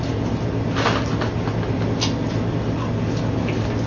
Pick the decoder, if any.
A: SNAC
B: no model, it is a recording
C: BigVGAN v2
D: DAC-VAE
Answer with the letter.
B